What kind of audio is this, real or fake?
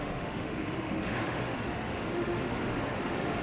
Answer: fake